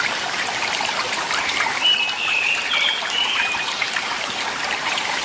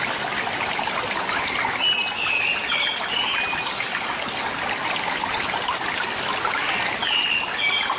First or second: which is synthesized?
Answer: first